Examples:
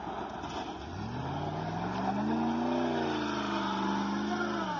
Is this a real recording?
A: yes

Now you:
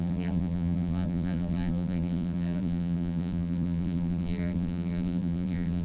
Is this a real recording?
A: no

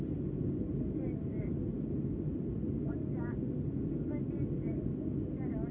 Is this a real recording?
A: yes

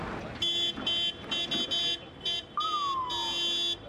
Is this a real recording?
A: yes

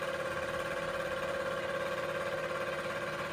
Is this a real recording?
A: yes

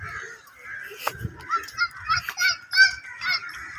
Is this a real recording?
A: yes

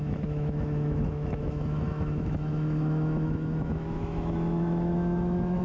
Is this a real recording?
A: no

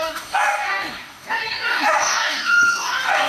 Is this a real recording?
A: no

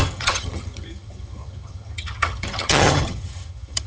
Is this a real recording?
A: no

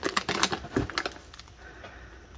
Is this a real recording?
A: yes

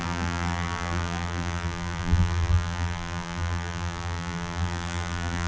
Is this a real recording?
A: no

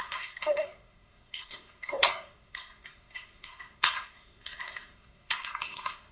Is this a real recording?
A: no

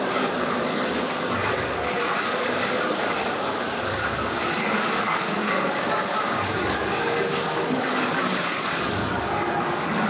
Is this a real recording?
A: no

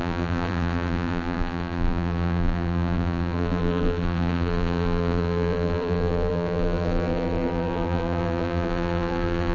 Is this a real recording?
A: no